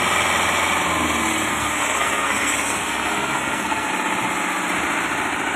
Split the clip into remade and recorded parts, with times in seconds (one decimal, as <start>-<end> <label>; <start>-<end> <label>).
0.0-1.5 recorded; 1.5-3.9 remade; 3.9-5.6 recorded